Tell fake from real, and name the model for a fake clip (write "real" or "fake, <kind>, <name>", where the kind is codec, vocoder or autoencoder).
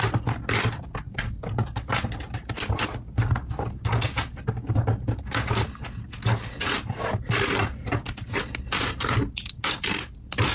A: real